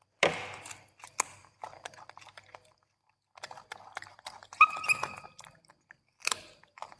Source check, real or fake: real